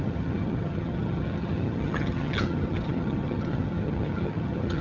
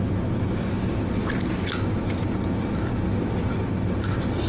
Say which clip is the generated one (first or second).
first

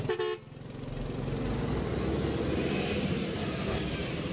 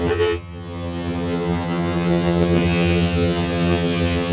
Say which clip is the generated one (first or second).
second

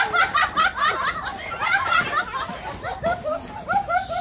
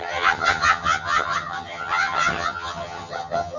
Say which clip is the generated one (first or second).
second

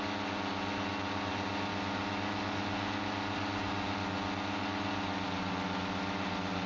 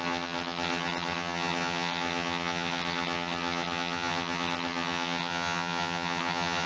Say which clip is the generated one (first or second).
second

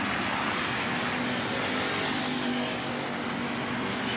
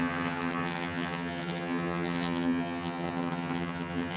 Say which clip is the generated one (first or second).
second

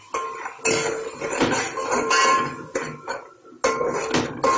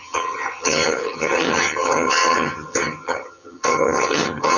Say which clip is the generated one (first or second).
second